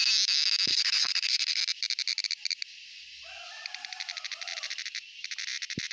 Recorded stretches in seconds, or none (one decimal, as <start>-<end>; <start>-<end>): 0.0-0.7; 1.6-5.9